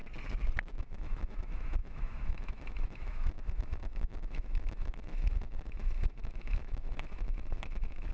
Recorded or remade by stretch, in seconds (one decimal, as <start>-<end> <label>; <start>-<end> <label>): 0.0-0.8 recorded; 0.8-8.1 remade